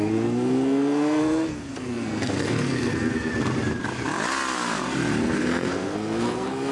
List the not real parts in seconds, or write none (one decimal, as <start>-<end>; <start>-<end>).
0.0-3.3; 5.2-6.7